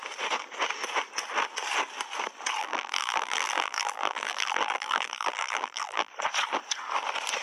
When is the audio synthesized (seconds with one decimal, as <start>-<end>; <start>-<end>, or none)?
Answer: 2.6-6.1